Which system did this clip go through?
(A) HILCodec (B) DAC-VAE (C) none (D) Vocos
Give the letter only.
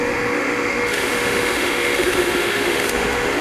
B